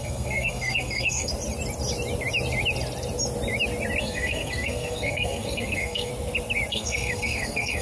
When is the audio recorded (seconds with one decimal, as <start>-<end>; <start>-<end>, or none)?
1.3-4.0; 6.1-6.7